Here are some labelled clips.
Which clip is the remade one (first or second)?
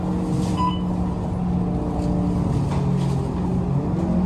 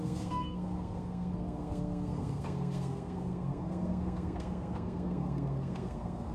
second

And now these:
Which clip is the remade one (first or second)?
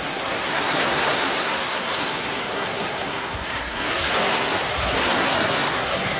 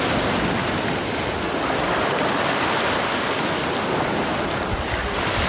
first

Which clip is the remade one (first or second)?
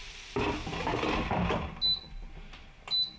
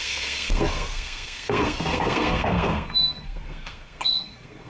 second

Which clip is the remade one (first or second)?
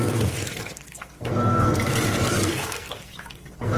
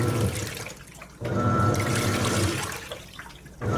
first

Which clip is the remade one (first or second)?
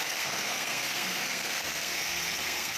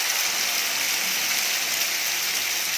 first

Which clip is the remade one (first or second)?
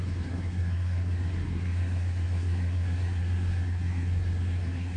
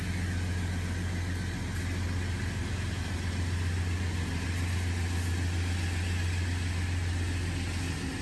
first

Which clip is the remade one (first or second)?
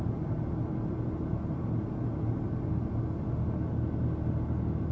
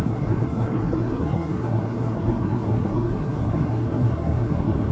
second